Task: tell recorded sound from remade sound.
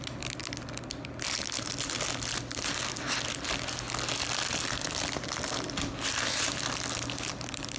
recorded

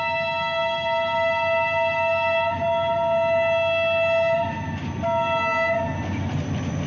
recorded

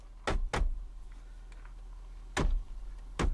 recorded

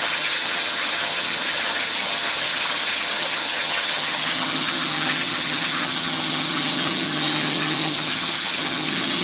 remade